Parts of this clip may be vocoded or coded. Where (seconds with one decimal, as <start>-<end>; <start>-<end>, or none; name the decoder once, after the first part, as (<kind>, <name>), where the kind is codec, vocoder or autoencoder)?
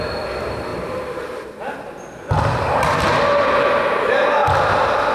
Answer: 0.7-1.5 (vocoder, BigVGAN v2)